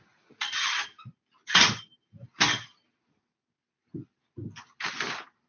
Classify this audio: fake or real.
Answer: real